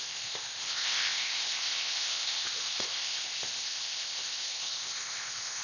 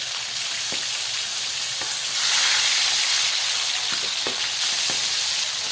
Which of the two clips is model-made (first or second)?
first